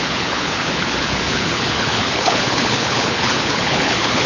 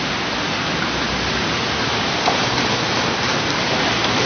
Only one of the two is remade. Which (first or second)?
first